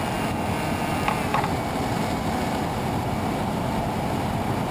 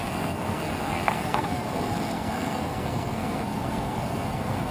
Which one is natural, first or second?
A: first